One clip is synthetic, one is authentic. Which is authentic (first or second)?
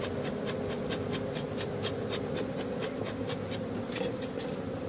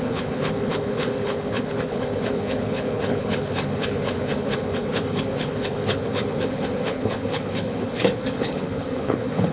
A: first